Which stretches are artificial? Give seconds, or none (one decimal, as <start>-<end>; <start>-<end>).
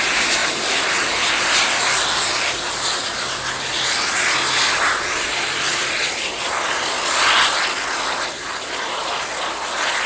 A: 0.4-3.2